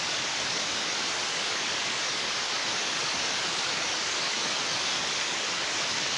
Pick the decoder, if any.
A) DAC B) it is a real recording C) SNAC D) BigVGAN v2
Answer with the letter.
A